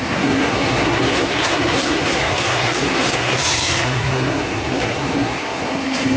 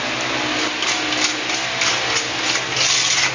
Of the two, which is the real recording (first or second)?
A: second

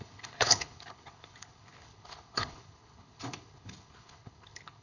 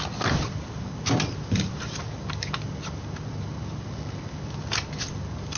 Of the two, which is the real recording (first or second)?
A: second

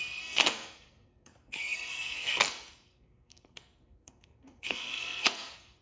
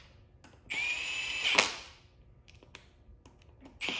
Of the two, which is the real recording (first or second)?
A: second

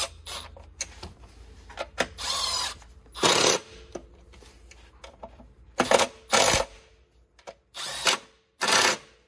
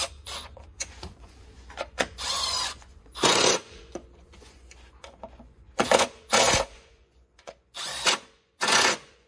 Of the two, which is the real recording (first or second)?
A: first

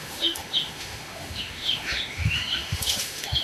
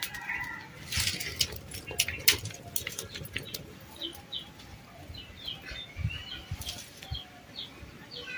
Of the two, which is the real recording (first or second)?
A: second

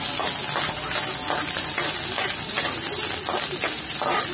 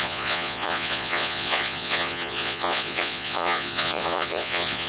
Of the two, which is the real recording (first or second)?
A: first